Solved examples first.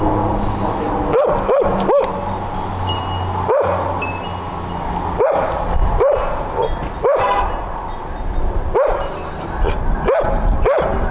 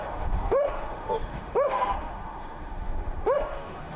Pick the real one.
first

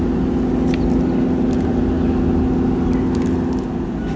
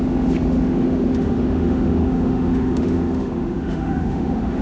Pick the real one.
first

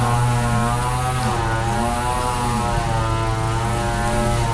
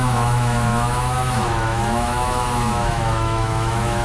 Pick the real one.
first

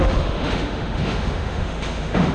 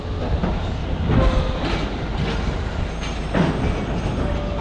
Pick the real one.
second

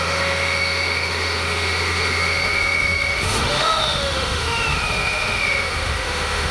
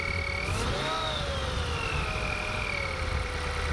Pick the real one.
second